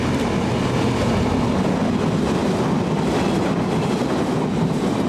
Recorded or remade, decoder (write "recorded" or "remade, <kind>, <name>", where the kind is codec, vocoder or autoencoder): recorded